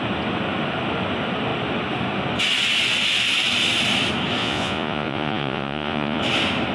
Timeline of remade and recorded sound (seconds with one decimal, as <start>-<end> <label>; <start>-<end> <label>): 0.0-4.4 recorded; 4.4-6.2 remade; 6.2-6.7 recorded